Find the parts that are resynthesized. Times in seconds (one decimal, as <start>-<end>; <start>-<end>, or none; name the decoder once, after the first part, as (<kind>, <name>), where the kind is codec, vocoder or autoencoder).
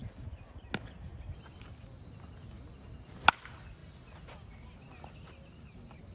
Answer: none